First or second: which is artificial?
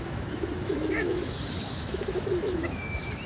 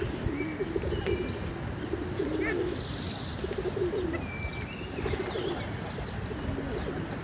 first